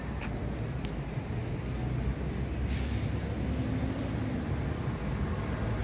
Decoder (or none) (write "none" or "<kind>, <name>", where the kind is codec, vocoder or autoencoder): none